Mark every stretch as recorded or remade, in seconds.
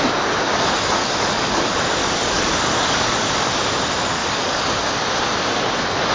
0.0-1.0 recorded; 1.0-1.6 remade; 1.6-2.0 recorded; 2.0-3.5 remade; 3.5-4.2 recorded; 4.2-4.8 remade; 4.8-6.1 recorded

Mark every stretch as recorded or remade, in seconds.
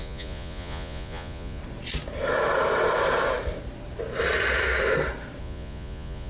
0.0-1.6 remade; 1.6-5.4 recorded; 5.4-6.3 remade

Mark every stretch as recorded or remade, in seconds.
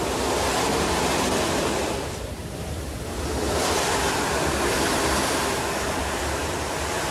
0.0-2.4 recorded; 2.4-5.7 remade; 5.7-7.1 recorded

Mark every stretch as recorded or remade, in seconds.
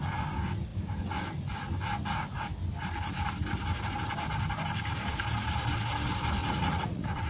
0.0-6.4 recorded; 6.4-7.3 remade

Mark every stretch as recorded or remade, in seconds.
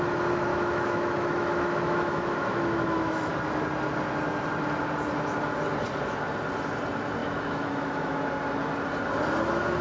0.0-0.5 recorded; 0.5-3.3 remade; 3.3-7.2 recorded; 7.2-8.2 remade; 8.2-9.8 recorded